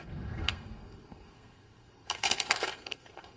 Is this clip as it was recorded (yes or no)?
no